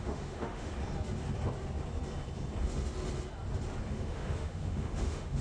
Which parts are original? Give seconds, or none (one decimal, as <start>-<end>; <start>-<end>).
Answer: 0.7-3.9